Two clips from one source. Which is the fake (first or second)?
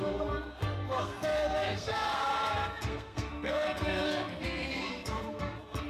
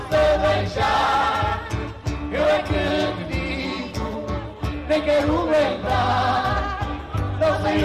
first